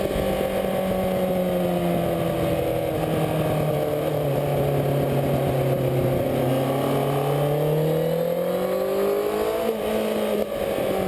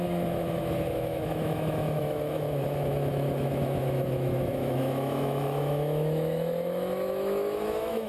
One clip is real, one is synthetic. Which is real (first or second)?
first